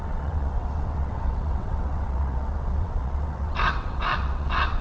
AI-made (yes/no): yes